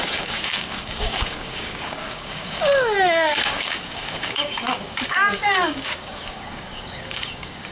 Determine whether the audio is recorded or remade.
remade